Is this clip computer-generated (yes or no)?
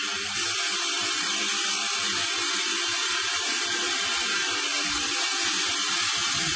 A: yes